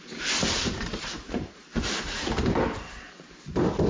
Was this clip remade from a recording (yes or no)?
yes